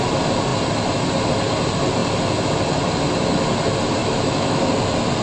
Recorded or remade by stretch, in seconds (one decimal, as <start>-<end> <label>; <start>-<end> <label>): 0.0-4.0 recorded; 4.0-4.7 remade; 4.7-5.2 recorded